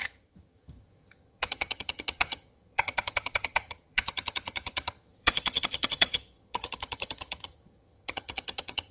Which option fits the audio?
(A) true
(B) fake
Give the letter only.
B